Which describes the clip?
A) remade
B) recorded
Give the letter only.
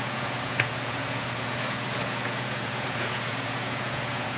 A